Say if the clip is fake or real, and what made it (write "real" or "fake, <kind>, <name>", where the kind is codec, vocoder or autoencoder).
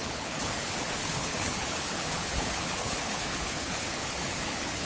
fake, codec, HILCodec